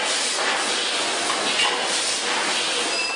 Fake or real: real